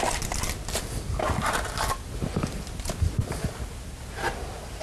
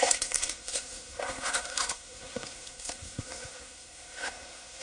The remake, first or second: second